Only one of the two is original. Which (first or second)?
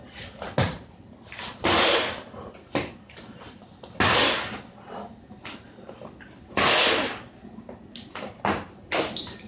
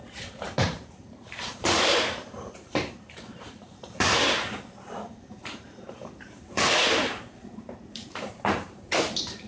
first